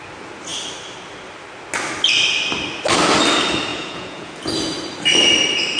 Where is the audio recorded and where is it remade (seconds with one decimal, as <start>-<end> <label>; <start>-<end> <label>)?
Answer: 0.0-3.7 recorded; 3.7-4.4 remade; 4.4-5.8 recorded